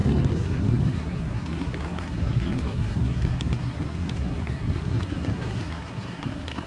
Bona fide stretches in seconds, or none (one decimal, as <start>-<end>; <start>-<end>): none